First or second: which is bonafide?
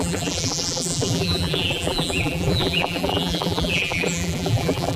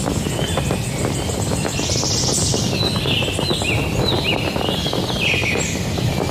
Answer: second